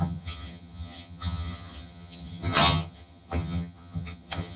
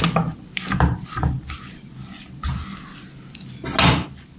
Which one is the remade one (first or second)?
first